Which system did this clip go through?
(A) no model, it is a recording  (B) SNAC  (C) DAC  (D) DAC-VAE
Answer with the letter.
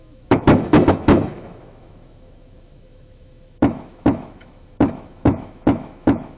D